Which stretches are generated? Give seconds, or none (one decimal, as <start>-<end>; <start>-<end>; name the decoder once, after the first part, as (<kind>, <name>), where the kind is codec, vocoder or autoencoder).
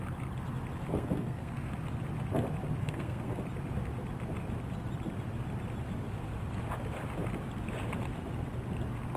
0.9-1.7 (codec, SNAC); 2.8-3.4